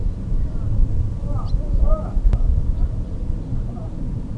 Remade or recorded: remade